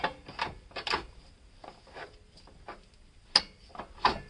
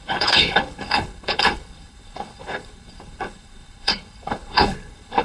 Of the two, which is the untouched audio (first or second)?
first